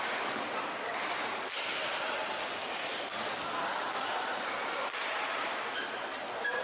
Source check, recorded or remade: recorded